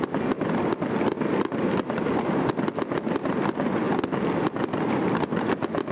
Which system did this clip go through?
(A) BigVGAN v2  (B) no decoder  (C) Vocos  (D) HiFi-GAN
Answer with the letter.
B